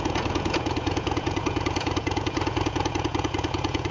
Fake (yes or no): yes